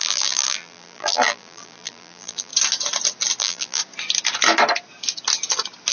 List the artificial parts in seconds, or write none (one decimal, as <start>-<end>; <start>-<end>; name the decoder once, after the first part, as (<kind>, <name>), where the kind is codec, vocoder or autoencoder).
0.0-2.5 (vocoder, BigVGAN v2); 3.4-3.8